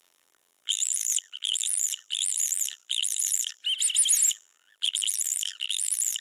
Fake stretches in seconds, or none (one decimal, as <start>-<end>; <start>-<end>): 0.0-3.6; 4.3-6.2